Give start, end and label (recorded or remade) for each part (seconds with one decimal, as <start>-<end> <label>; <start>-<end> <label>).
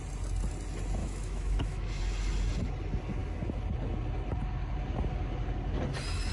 0.0-1.0 recorded; 1.0-2.0 remade; 2.0-6.3 recorded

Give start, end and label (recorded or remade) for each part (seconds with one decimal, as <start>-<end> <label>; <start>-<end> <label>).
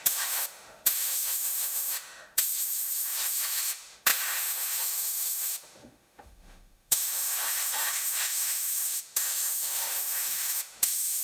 0.0-11.2 remade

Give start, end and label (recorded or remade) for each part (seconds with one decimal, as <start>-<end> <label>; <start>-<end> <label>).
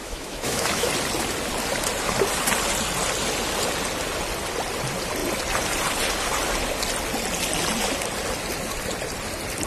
0.0-0.9 remade; 0.9-9.7 recorded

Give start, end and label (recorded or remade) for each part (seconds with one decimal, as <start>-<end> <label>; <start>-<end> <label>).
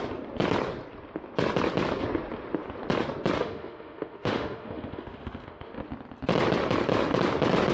0.0-3.4 recorded; 3.4-5.8 remade; 5.8-7.7 recorded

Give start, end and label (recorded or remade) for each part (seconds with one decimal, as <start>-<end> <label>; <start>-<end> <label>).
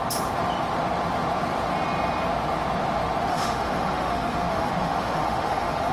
0.0-3.3 recorded; 3.3-5.9 remade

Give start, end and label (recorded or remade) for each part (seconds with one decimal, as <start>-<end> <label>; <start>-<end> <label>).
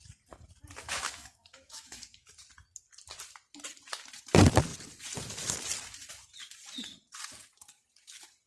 0.0-0.8 recorded; 0.8-2.3 remade; 2.3-8.5 recorded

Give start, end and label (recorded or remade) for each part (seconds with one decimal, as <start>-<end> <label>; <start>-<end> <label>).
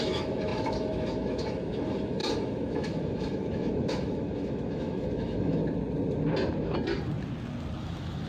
0.0-5.6 remade; 5.6-7.8 recorded; 7.8-8.3 remade